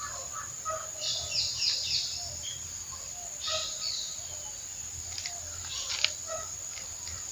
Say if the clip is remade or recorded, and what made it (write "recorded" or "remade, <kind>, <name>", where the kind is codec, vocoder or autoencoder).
recorded